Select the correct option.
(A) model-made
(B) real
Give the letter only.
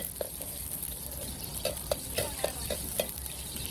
A